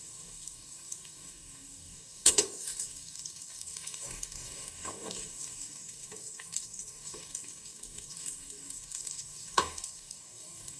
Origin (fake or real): fake